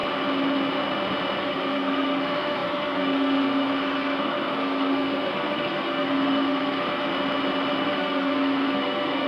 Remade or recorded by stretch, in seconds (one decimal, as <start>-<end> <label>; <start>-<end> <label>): 0.0-1.4 recorded; 1.4-7.1 remade; 7.1-7.8 recorded; 7.8-9.3 remade